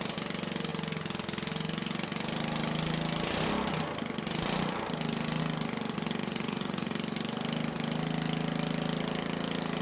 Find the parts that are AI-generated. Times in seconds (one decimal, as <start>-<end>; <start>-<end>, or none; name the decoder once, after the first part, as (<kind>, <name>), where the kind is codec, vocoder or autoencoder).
6.2-6.9 (vocoder, Vocos)